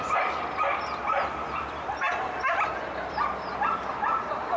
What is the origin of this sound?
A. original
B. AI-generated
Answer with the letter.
B